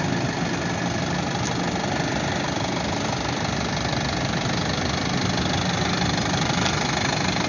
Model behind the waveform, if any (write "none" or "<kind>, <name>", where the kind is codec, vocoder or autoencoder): none